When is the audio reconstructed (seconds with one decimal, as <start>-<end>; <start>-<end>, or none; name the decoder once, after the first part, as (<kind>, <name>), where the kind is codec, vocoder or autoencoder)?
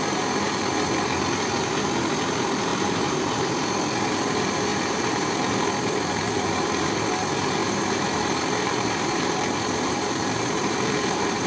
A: 2.7-3.7 (vocoder, BigVGAN v2); 4.7-5.3; 7.6-11.5